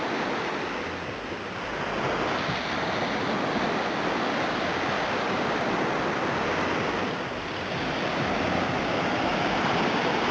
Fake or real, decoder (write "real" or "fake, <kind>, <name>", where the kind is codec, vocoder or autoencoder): real